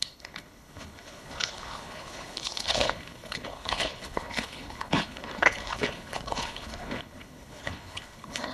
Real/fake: fake